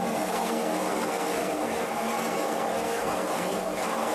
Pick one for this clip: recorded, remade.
remade